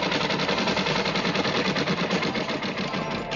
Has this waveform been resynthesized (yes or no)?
no